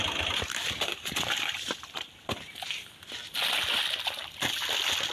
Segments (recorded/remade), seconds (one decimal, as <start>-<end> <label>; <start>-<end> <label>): 0.0-2.1 remade; 2.1-5.1 recorded